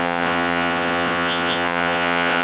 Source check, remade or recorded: remade